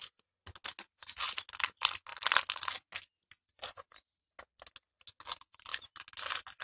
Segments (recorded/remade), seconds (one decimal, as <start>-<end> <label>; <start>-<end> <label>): 0.0-6.6 recorded